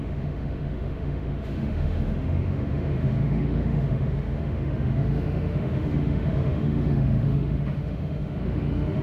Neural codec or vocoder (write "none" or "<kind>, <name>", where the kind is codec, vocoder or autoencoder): autoencoder, DAC-VAE